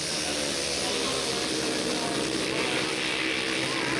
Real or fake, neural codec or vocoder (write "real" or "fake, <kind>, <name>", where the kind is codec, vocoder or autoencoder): real